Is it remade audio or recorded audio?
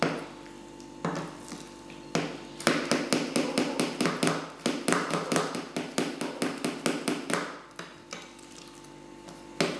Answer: recorded